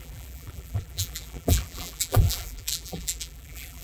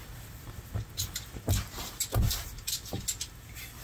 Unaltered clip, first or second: second